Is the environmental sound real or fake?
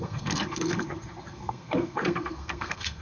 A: fake